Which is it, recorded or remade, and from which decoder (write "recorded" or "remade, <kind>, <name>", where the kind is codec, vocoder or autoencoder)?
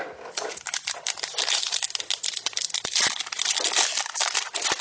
recorded